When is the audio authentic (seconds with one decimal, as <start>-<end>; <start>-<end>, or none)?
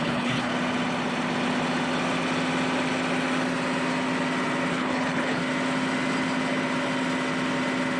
0.5-4.7; 5.4-8.0